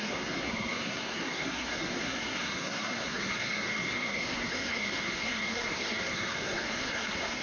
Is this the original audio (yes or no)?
no